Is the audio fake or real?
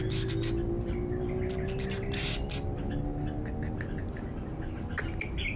real